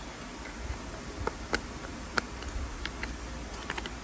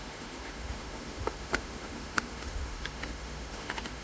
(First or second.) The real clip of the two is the first